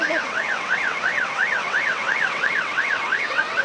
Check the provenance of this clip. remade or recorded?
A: remade